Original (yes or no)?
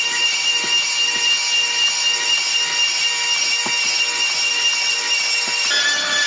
yes